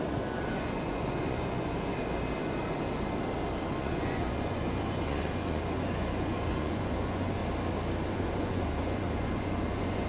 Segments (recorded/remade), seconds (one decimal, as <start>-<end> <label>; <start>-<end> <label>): 0.0-1.9 remade; 1.9-3.7 recorded; 3.7-7.4 remade; 7.4-8.1 recorded; 8.1-10.1 remade